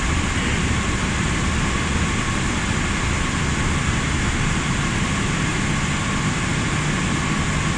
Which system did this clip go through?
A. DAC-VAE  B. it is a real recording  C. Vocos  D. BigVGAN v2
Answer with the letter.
B